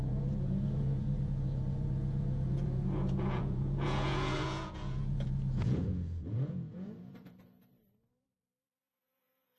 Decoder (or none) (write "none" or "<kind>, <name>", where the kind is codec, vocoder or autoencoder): vocoder, Vocos